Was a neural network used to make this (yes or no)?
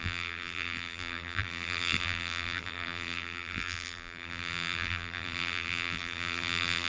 yes